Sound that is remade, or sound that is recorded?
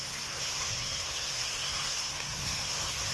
remade